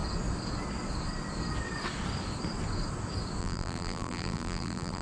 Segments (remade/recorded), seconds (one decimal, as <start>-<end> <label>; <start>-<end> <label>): 0.0-3.4 recorded; 3.4-5.0 remade